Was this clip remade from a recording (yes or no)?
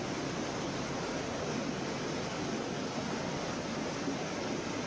no